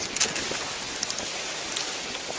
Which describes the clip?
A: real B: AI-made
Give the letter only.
A